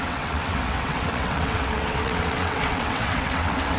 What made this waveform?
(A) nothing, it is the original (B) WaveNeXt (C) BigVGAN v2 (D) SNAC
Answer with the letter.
B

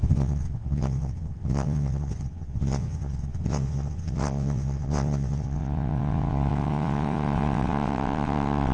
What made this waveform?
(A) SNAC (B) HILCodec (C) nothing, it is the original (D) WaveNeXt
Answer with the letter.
D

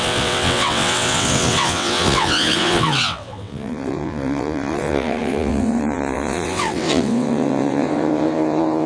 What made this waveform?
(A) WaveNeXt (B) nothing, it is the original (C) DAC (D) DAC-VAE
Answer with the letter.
A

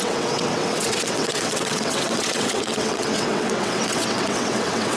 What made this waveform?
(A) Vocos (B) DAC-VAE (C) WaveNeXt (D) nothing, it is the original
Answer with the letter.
C